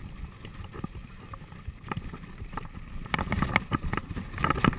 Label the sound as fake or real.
real